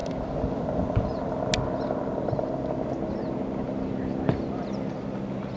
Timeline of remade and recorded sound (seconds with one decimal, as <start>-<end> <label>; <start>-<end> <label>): 0.0-5.6 recorded